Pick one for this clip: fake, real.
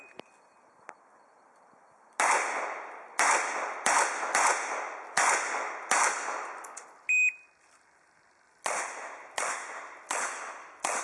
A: real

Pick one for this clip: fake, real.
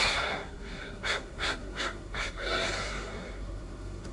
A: fake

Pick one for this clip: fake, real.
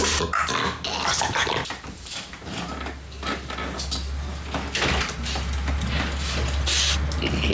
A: real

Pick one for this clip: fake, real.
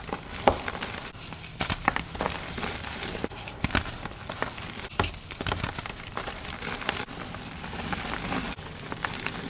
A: fake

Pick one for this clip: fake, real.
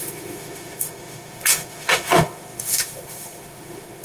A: fake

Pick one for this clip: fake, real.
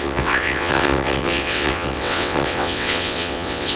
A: fake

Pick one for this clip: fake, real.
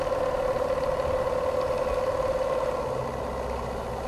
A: real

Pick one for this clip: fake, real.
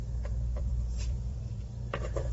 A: fake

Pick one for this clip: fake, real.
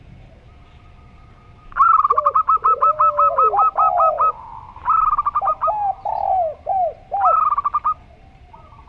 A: real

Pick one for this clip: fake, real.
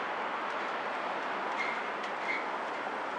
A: real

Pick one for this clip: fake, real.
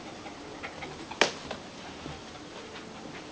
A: real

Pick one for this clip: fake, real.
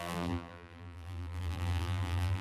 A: fake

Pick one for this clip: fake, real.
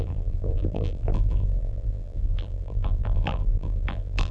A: fake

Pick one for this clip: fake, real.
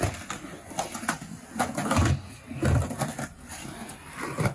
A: real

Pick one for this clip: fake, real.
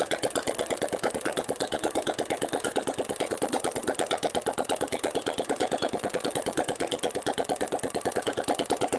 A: fake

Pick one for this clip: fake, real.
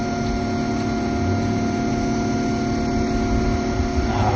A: real